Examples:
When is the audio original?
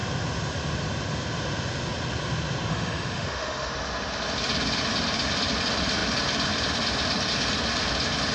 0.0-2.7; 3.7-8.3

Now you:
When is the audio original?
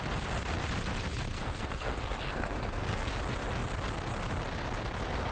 0.0-1.3; 3.1-5.3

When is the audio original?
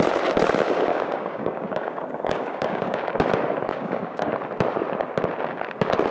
0.0-0.9; 3.1-3.7; 4.3-6.1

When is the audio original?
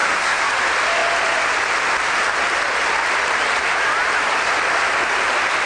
0.5-5.7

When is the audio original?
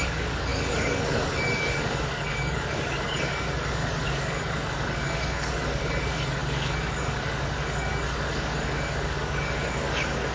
none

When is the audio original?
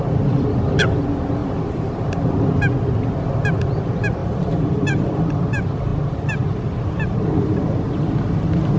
0.0-1.4; 2.6-4.2; 5.4-8.8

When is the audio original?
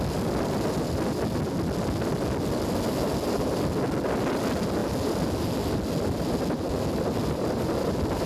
0.0-8.3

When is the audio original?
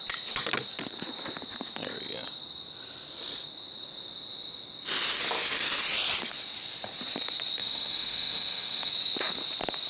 0.0-7.6; 8.9-9.9